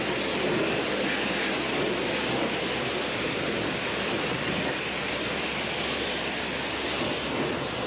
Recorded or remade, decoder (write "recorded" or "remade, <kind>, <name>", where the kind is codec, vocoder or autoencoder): recorded